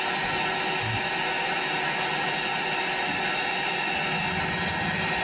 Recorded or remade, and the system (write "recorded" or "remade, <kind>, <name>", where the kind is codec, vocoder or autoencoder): recorded